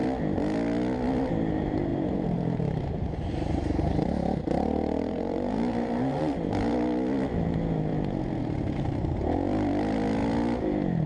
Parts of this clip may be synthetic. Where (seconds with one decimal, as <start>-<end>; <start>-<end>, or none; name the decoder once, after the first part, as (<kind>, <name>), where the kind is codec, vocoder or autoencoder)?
1.9-6.7 (vocoder, BigVGAN v2); 7.9-8.9